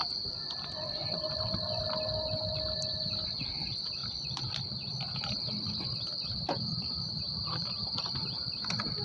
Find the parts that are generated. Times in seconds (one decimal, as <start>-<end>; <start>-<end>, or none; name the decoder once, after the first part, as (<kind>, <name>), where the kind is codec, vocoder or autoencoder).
0.0-1.8 (vocoder, BigVGAN v2)